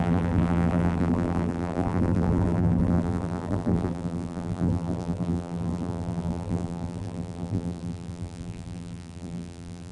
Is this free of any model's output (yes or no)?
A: no